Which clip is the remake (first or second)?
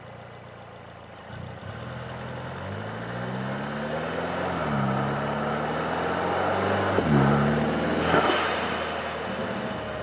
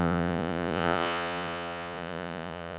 second